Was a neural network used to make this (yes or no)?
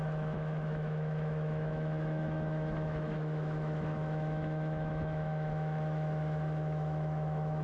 yes